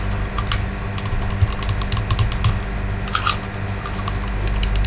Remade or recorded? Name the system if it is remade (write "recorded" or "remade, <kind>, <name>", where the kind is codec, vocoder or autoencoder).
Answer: recorded